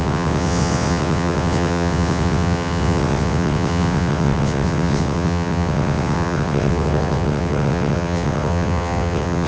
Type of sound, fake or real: fake